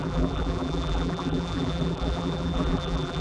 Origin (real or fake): fake